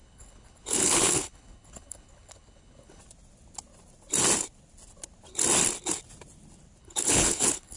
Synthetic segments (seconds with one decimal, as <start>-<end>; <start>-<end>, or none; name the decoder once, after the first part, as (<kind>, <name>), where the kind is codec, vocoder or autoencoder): 0.0-3.0 (codec, HILCodec); 6.8-7.8

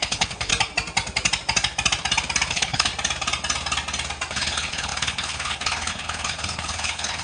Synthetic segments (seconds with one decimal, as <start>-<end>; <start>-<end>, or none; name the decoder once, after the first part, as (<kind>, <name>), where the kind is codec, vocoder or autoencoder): 0.0-0.5 (codec, HILCodec); 2.5-2.9; 4.3-7.2

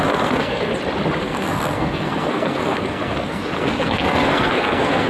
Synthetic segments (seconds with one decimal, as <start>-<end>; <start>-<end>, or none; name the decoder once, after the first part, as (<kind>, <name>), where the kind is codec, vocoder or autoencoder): 0.0-0.7 (codec, SNAC); 1.2-5.1

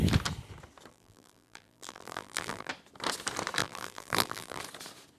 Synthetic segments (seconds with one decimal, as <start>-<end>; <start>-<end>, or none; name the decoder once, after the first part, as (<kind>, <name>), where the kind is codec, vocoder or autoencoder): 0.9-2.7 (vocoder, BigVGAN v2); 3.6-4.6

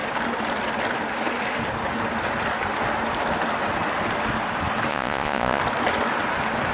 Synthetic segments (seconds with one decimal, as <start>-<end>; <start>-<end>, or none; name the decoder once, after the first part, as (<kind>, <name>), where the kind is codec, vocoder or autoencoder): 4.9-5.6 (vocoder, Vocos)